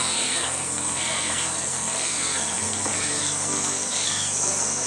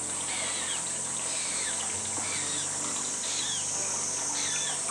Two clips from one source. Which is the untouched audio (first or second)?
second